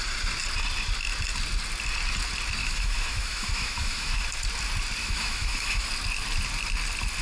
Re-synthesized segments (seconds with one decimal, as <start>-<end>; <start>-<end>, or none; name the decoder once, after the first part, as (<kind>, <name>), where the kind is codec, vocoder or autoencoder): 2.6-4.3 (autoencoder, DAC-VAE); 5.0-5.9